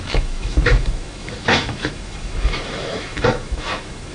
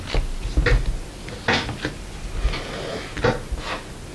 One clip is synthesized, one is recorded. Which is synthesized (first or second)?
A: first